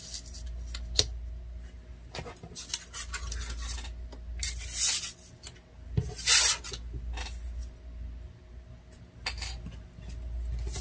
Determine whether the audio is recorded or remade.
recorded